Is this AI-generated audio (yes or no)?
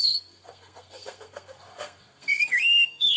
yes